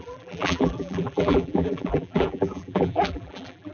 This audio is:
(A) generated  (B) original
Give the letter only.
A